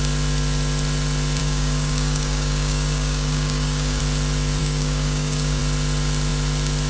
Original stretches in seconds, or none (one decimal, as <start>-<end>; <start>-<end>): 0.0-1.4; 4.0-4.6; 5.6-6.9